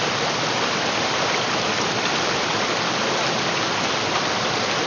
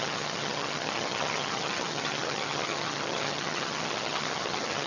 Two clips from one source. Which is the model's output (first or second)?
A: second